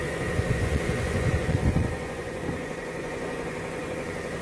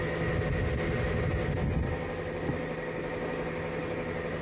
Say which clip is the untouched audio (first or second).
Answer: second